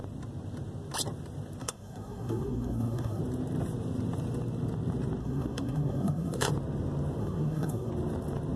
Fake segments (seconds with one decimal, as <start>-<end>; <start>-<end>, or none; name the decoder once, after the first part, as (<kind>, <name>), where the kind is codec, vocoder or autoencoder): 1.6-3.2 (codec, SNAC); 5.2-6.5; 7.2-7.9